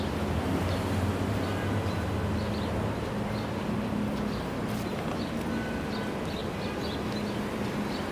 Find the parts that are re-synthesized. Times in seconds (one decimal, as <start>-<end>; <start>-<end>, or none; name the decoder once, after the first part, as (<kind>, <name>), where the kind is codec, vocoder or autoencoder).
6.4-7.1 (vocoder, BigVGAN v2)